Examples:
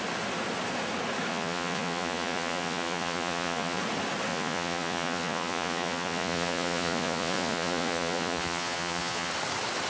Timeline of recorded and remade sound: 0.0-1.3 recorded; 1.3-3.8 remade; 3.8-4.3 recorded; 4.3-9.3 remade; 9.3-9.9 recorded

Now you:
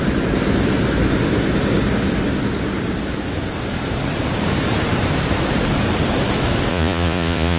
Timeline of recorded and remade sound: 0.0-6.7 recorded; 6.7-7.6 remade